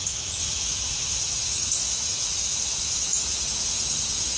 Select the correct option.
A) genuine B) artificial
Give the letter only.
B